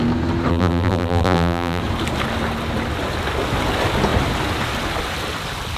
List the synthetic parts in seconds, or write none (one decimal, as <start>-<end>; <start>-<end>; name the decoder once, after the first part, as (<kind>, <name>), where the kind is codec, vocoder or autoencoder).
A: 0.5-1.8 (vocoder, BigVGAN v2)